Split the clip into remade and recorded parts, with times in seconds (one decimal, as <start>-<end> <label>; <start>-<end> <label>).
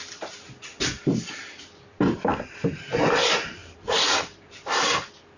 0.0-3.6 recorded; 3.6-4.8 remade; 4.8-5.4 recorded